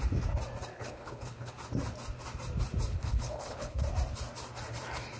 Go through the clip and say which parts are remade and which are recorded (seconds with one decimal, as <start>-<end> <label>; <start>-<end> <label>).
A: 0.0-0.7 recorded; 0.7-1.5 remade; 1.5-2.9 recorded; 2.9-3.8 remade; 3.8-5.2 recorded